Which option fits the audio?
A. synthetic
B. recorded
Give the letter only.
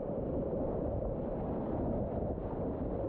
A